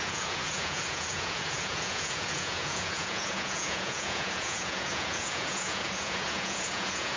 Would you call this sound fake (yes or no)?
yes